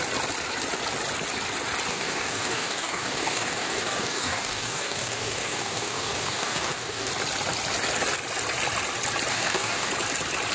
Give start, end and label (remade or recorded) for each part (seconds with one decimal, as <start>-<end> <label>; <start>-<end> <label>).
0.0-1.9 recorded; 1.9-7.1 remade; 7.1-9.3 recorded; 9.3-9.9 remade; 9.9-10.5 recorded